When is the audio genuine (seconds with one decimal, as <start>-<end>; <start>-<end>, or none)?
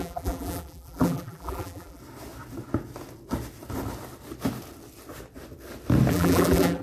2.0-6.1